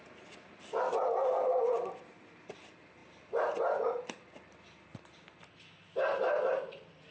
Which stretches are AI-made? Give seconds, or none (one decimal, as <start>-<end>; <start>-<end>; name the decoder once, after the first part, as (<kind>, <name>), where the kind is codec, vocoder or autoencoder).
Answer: none